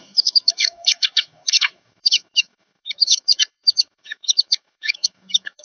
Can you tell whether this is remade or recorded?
remade